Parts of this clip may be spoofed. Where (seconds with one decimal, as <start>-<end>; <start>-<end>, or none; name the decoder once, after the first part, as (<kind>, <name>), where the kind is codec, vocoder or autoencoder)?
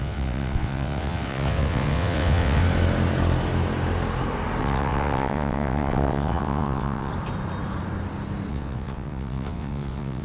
0.0-2.6 (vocoder, WaveNeXt); 4.6-7.1; 8.5-10.2